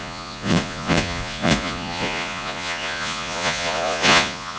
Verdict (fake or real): fake